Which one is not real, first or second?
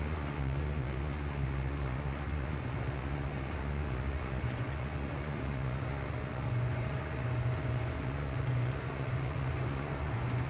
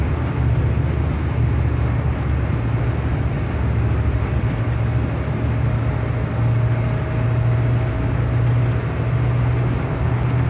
first